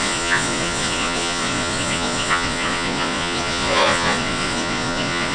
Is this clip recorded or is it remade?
remade